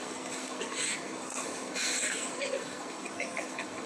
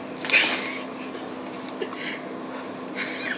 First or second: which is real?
second